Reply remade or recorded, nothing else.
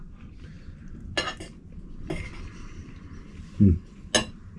recorded